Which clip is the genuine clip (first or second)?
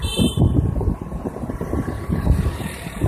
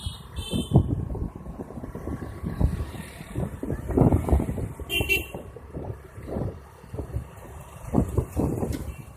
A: first